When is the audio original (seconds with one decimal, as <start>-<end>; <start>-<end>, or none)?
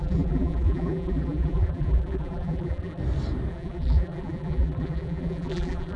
3.0-3.5